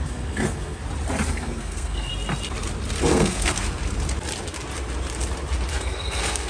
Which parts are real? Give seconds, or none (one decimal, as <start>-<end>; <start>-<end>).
0.8-1.3; 2.1-3.0; 3.8-5.7